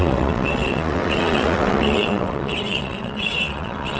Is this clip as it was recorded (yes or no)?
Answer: no